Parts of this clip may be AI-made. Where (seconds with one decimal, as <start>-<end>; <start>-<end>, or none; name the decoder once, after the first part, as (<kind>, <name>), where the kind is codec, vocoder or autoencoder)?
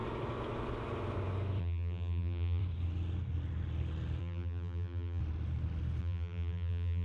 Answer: 1.6-2.6 (vocoder, BigVGAN v2); 4.2-5.2; 6.0-7.0